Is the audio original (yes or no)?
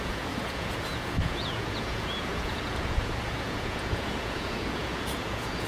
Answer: no